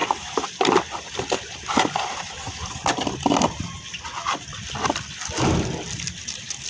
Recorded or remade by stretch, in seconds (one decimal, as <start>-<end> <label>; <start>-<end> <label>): 0.0-6.7 recorded